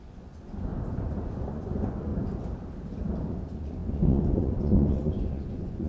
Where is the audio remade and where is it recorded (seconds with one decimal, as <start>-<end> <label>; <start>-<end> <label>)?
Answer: 0.0-0.7 remade; 0.7-1.2 recorded; 1.2-2.1 remade; 2.1-3.3 recorded; 3.3-5.9 remade